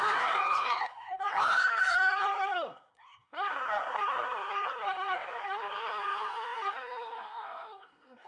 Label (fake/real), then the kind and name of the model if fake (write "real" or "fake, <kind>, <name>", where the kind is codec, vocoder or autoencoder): fake, codec, SNAC